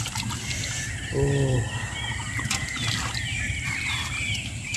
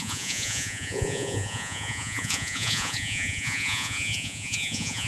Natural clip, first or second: first